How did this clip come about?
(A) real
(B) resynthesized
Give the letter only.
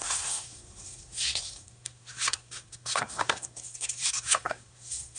B